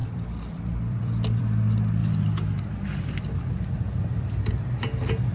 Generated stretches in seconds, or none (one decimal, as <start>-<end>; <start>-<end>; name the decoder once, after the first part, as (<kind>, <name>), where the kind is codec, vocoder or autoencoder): 0.0-1.4 (vocoder, BigVGAN v2); 2.0-3.8